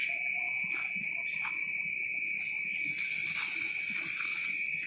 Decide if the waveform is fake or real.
real